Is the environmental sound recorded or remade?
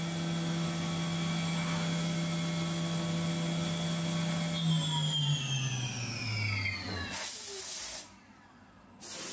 recorded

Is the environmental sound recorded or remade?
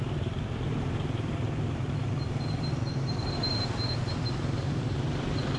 remade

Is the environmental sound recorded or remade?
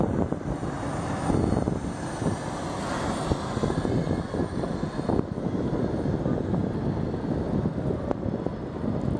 recorded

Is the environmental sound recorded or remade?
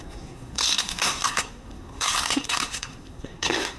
remade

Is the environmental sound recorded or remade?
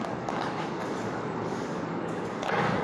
remade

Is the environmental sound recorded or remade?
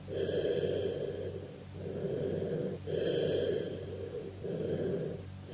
recorded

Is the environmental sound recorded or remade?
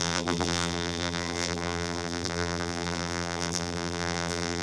remade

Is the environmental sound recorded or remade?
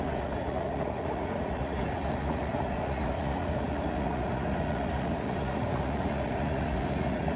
remade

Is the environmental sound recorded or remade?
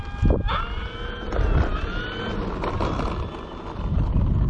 recorded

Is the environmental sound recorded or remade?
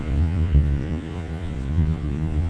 remade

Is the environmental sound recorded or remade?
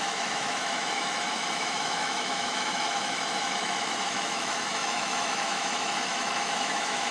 remade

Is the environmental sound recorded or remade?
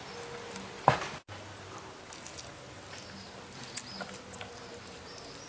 recorded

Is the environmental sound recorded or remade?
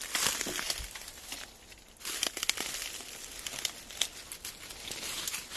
recorded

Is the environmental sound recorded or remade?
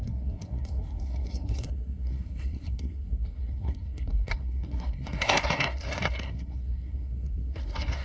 remade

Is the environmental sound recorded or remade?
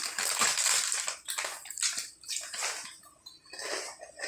recorded